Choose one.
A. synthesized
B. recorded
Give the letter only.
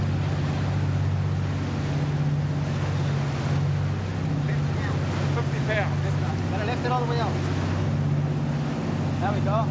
B